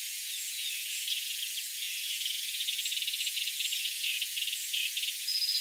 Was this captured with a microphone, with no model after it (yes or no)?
no